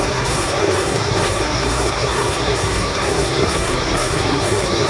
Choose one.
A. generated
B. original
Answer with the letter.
A